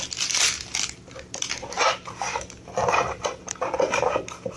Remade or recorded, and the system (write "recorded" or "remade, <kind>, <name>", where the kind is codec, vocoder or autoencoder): recorded